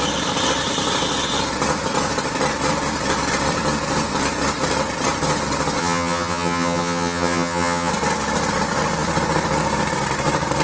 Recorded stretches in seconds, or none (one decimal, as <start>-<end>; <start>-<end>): 0.0-5.8; 7.9-10.6